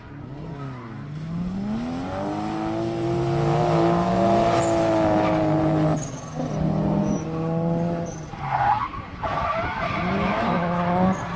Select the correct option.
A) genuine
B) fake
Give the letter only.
A